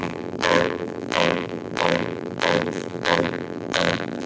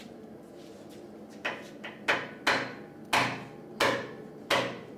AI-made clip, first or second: first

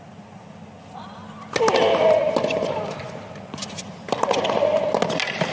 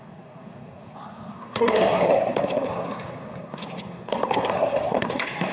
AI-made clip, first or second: second